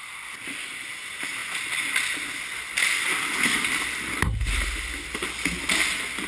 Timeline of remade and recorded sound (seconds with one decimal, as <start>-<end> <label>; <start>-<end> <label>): 0.0-6.3 recorded